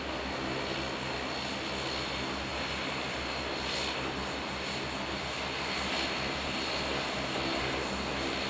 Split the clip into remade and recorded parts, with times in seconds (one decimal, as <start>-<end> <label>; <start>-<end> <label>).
0.0-8.5 recorded